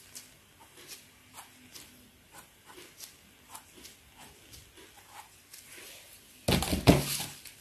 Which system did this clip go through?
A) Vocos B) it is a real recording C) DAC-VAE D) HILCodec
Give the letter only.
B